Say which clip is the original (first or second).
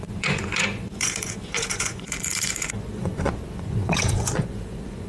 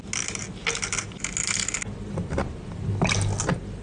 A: second